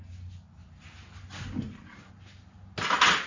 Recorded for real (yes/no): yes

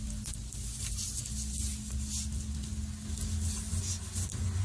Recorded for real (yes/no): yes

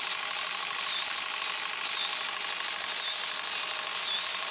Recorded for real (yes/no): yes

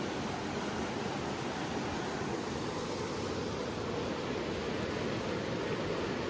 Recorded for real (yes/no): yes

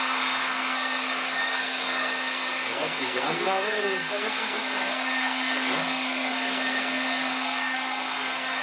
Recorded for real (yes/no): no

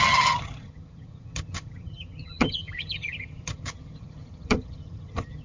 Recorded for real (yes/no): no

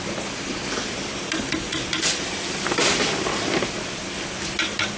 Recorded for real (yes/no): yes